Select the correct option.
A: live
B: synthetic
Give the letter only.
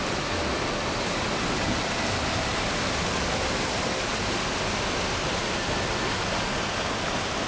A